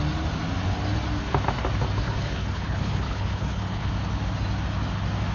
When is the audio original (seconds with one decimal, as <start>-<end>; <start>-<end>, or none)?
0.0-2.0; 3.9-5.3